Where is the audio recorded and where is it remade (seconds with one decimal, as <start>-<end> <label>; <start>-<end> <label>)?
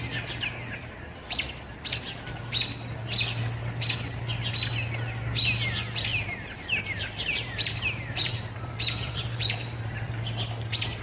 0.0-0.8 recorded; 0.8-1.8 remade; 1.8-6.1 recorded; 6.1-10.1 remade; 10.1-11.0 recorded